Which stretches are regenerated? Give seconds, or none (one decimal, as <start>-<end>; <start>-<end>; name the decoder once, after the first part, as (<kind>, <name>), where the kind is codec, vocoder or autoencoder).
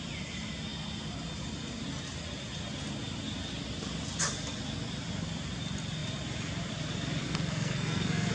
7.2-8.3 (codec, SNAC)